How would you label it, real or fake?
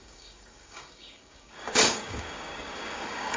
fake